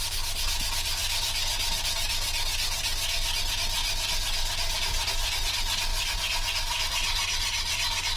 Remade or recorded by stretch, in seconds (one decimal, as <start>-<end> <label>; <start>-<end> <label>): 0.0-3.8 recorded; 3.8-5.4 remade; 5.4-5.9 recorded; 5.9-8.2 remade